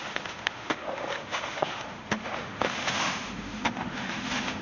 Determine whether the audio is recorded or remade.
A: remade